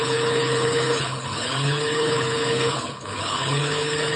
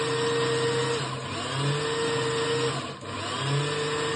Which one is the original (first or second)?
second